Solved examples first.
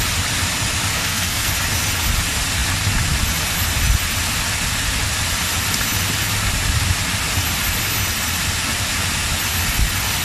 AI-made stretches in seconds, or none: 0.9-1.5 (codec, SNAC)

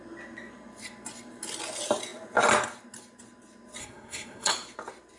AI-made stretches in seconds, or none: 3.8-4.5 (codec, SNAC)

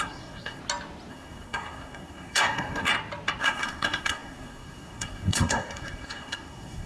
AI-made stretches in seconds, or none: 0.0-0.6 (codec, SNAC); 1.1-2.9; 3.4-6.9

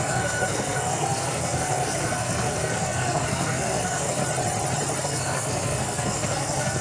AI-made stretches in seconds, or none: 0.0-4.2 (codec, SNAC); 5.0-6.8